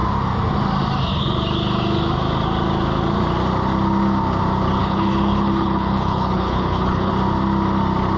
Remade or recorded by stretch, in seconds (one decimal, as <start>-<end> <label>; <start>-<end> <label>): 0.0-4.8 recorded; 4.8-7.1 remade; 7.1-8.2 recorded